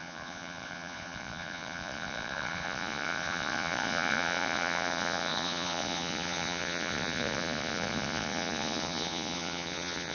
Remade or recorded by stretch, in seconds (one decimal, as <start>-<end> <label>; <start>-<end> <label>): 0.0-10.1 remade